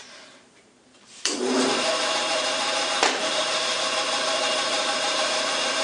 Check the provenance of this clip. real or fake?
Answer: fake